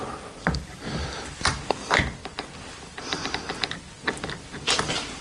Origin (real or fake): fake